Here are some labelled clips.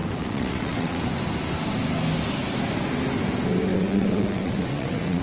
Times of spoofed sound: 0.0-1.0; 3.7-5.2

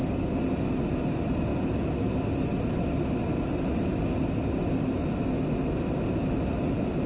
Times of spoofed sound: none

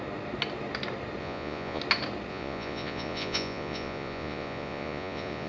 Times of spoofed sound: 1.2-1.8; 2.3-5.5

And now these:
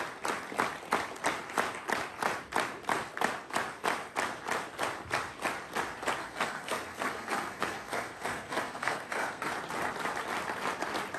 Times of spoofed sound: 6.2-9.5

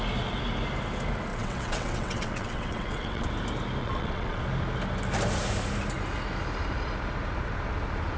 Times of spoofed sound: 1.3-3.3; 3.8-4.4

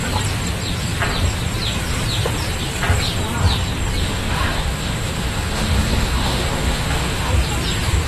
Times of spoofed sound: 4.0-7.3